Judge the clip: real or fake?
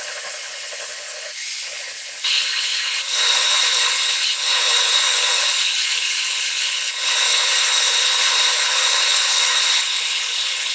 fake